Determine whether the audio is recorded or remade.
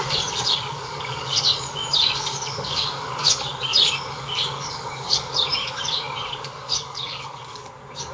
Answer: remade